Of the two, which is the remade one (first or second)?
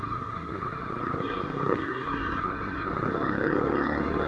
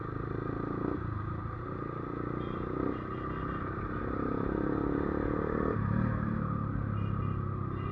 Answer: first